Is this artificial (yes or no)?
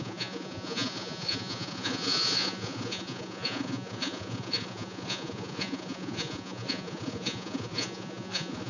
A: yes